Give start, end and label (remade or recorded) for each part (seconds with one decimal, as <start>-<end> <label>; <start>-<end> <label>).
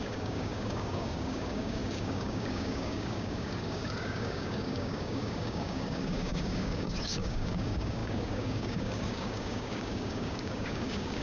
0.0-11.2 remade